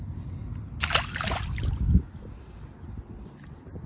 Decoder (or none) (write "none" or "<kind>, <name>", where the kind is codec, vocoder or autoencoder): none